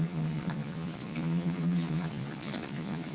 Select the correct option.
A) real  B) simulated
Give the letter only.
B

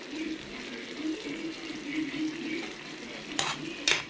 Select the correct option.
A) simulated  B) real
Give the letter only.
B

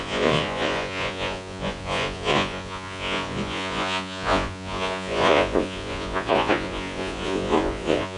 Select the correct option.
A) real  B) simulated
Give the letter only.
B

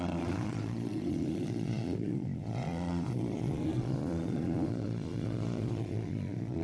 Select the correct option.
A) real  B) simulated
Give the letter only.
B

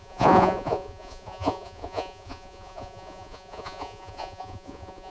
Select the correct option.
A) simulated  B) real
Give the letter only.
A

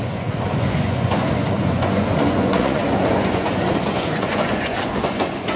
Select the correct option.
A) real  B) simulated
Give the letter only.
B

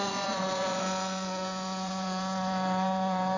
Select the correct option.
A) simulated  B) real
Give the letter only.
A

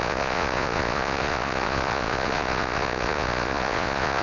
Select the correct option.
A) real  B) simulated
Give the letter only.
B